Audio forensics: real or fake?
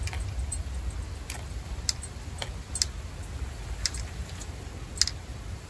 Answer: real